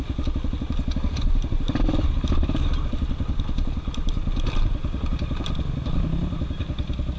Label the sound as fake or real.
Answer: real